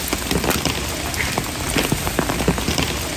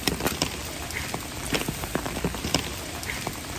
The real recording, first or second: first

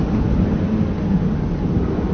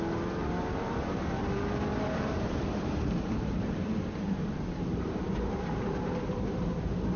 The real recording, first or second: first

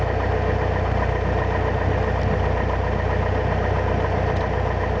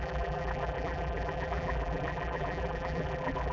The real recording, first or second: first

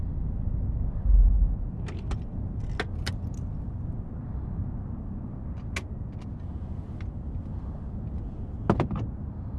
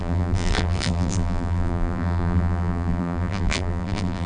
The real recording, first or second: first